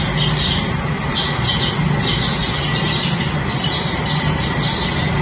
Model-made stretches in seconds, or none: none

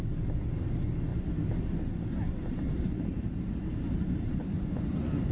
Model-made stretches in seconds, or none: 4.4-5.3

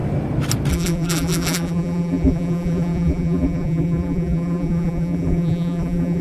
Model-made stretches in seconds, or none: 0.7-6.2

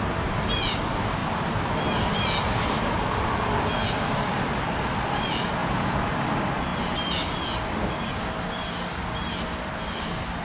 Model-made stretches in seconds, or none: 5.6-6.1

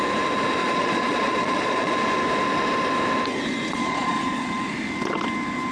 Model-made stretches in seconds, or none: 0.6-1.9; 3.7-4.2

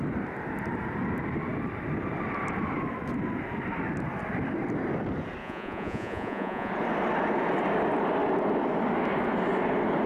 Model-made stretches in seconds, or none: 5.4-6.7

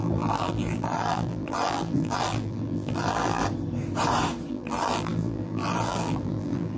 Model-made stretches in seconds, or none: 0.0-3.4; 4.5-6.8

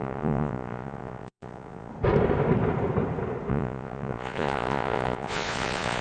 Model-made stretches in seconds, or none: 0.0-1.9; 3.5-6.0